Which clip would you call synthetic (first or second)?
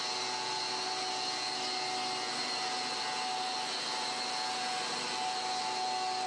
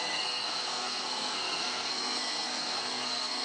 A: second